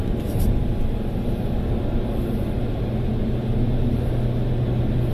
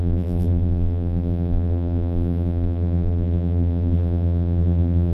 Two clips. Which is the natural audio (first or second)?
first